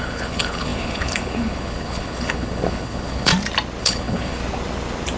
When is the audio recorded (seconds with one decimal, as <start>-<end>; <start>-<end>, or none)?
3.3-3.8; 4.4-5.2